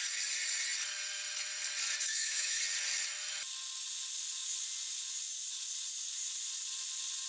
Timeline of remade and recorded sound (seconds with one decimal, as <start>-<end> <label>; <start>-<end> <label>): 0.0-2.1 recorded; 2.1-2.6 remade; 2.6-7.3 recorded